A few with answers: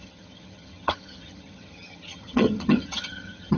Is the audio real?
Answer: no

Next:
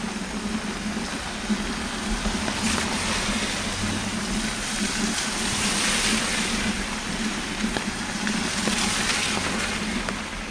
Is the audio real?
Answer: yes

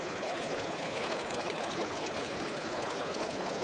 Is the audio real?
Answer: no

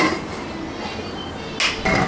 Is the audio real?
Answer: yes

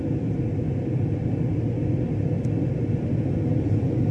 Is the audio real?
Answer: yes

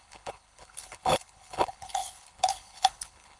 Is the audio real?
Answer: no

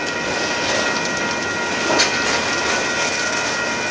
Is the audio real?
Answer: yes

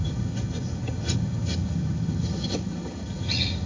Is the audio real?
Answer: no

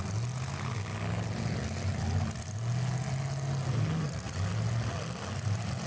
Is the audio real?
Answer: yes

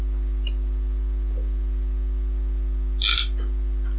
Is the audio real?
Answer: yes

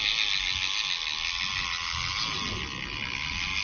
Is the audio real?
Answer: yes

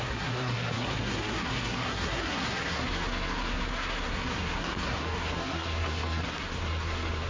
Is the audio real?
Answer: no